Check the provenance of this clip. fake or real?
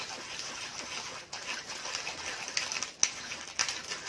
real